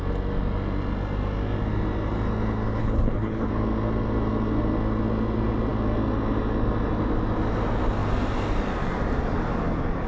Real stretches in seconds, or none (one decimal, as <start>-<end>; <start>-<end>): 0.0-2.8; 3.5-10.1